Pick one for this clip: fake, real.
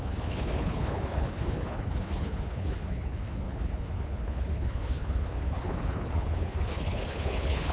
fake